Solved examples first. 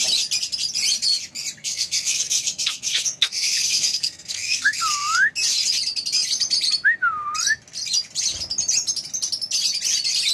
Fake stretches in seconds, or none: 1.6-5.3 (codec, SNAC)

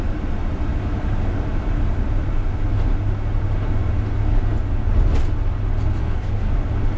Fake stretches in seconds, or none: 6.0-6.5 (codec, SNAC)

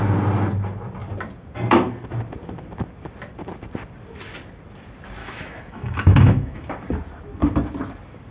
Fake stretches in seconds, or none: 5.2-6.7 (autoencoder, DAC-VAE)

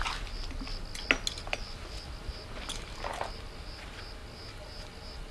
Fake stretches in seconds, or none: none

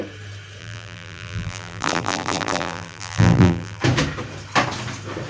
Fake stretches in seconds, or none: 0.6-3.8 (vocoder, BigVGAN v2)